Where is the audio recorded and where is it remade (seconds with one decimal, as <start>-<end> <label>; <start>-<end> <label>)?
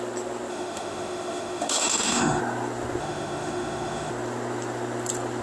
0.0-0.5 recorded; 0.5-2.4 remade; 2.4-3.0 recorded; 3.0-4.1 remade; 4.1-5.4 recorded